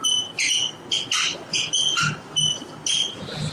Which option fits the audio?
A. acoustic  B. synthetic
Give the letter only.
A